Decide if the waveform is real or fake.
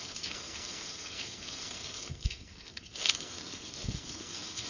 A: fake